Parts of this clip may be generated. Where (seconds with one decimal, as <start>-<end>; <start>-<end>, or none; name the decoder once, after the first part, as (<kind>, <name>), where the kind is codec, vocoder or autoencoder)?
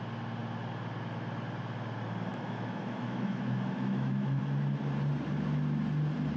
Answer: 2.3-4.4 (autoencoder, DAC-VAE)